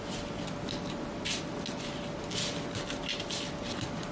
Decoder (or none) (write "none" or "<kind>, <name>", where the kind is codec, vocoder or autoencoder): none